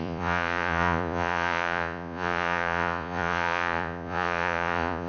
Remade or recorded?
remade